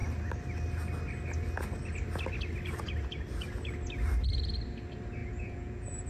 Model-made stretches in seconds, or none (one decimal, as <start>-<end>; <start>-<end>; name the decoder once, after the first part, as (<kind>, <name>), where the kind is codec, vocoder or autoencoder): 5.2-6.1 (vocoder, Vocos)